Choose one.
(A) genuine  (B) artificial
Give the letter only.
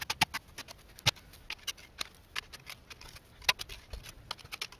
A